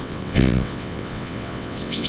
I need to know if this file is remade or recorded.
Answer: remade